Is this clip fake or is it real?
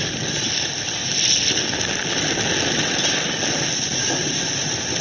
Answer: real